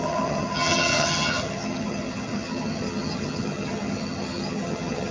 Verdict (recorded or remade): remade